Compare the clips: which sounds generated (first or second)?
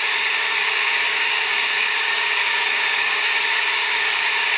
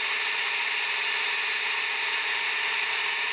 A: first